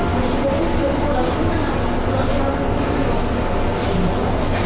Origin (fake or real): real